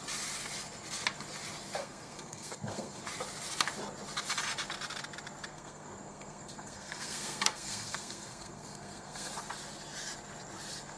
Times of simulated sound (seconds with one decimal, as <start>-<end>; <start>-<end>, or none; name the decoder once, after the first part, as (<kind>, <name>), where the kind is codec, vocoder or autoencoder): 1.8-3.0 (codec, SNAC); 5.5-9.3